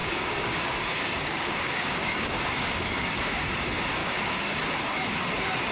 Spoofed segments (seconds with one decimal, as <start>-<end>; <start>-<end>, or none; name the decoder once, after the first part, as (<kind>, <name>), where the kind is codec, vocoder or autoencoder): 0.0-3.4 (codec, DAC); 4.0-4.6